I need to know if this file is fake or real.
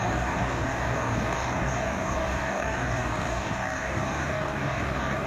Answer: fake